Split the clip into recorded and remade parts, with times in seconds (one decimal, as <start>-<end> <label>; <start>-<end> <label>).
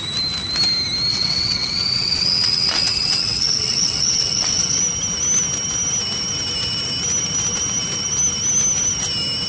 0.0-1.1 recorded; 1.1-4.8 remade; 4.8-9.5 recorded